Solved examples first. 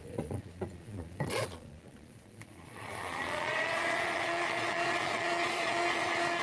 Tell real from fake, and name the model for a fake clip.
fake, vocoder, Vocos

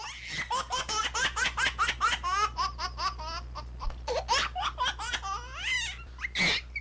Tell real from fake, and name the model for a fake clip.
real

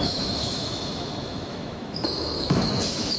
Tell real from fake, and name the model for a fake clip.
fake, autoencoder, DAC-VAE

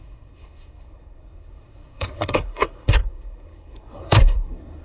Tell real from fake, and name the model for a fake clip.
fake, codec, SNAC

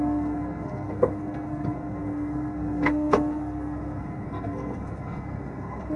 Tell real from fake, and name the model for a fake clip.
fake, codec, SNAC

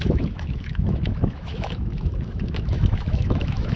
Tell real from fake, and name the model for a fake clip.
fake, autoencoder, DAC-VAE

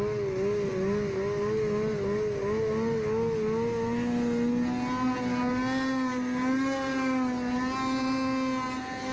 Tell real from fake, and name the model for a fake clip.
real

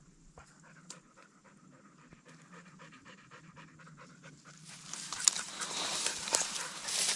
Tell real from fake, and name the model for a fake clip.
fake, vocoder, BigVGAN v2